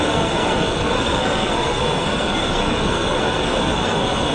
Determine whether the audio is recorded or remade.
remade